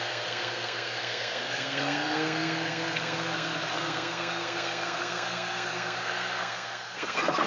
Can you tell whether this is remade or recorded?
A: remade